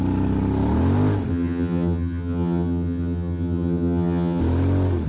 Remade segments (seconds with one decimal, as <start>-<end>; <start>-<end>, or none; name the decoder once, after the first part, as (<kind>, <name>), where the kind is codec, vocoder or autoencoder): 1.3-4.4 (vocoder, HiFi-GAN)